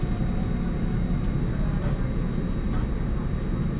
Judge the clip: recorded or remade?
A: recorded